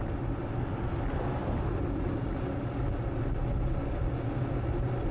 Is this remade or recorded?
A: recorded